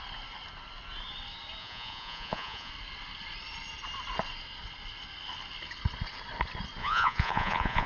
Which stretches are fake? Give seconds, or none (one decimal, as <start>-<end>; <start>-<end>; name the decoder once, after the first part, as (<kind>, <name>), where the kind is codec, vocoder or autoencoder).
1.6-2.7 (vocoder, Vocos); 6.8-7.9